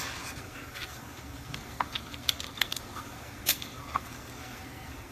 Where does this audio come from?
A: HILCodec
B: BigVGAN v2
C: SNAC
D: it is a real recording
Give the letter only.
C